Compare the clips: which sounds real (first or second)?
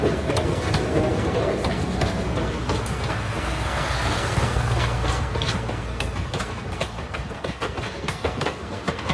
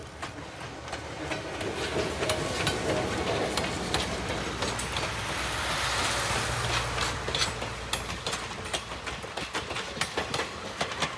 second